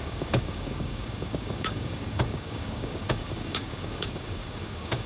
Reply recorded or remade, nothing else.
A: remade